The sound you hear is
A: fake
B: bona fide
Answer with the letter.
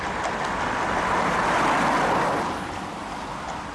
B